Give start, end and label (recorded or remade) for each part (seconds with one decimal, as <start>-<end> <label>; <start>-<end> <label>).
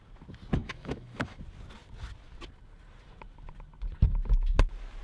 0.0-0.6 recorded; 0.6-1.4 remade; 1.4-5.0 recorded